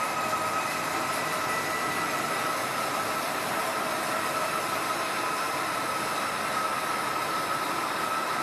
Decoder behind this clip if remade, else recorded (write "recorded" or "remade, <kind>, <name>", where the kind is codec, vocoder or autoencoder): recorded